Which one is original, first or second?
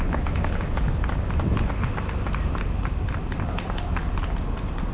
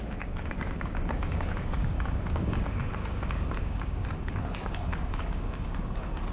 first